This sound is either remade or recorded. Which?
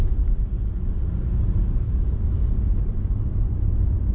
remade